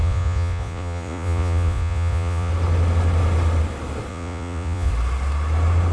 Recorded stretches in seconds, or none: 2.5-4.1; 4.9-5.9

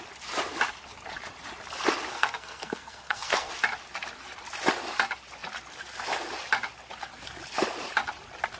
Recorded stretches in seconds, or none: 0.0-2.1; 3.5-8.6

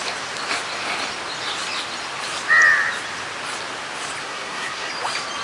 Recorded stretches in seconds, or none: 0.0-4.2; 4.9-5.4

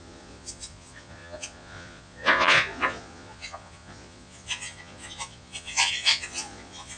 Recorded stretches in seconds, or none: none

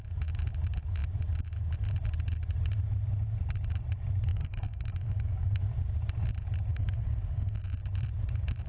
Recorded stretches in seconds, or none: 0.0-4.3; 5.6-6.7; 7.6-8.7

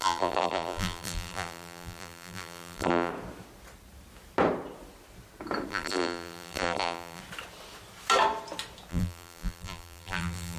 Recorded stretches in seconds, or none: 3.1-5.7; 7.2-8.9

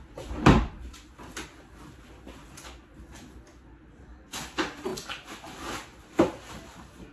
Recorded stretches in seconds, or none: 0.0-7.1